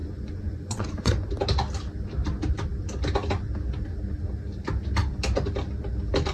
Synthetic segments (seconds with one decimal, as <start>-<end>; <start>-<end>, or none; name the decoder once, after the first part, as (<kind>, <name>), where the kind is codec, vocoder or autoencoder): 0.0-1.3 (vocoder, Vocos)